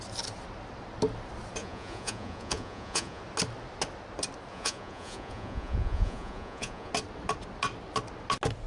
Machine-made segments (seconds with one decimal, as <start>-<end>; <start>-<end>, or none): 1.6-3.2; 4.5-6.9